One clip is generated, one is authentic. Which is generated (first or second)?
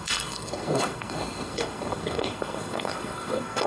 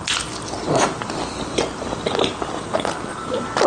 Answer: first